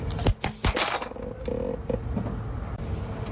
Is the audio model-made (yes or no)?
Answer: no